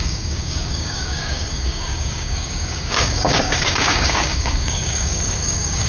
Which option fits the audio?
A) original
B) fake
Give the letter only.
B